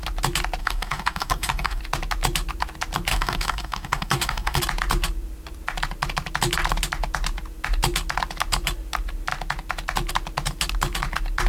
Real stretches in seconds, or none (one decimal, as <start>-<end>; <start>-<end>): 0.0-0.6; 1.8-3.1; 4.6-11.5